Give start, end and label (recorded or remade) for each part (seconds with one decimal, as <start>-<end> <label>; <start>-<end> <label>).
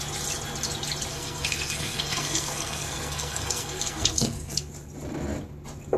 0.0-1.1 recorded; 1.1-4.7 remade; 4.7-6.0 recorded